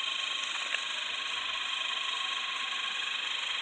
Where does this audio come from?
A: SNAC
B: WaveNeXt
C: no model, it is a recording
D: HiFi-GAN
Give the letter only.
C